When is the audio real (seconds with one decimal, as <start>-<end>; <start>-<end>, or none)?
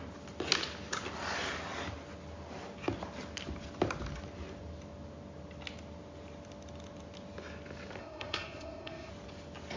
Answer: 0.0-8.0; 9.1-9.8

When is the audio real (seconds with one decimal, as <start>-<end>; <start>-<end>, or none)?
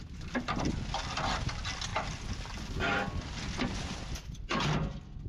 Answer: 0.0-5.3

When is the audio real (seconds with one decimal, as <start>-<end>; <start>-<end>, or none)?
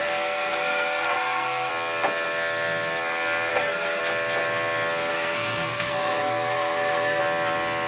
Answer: 1.7-3.5; 4.0-5.1; 7.2-7.9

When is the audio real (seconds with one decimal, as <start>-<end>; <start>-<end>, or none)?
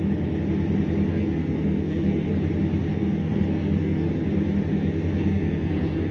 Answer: 0.0-1.1; 2.3-2.9; 4.1-4.7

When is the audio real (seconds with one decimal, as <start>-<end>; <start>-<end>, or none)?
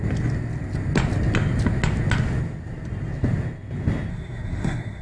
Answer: 0.0-4.1